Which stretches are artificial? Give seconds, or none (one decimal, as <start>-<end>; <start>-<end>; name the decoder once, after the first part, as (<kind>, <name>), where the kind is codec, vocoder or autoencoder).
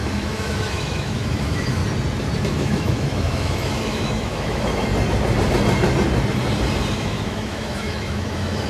0.0-1.8 (autoencoder, DAC-VAE); 2.4-4.9; 6.9-8.7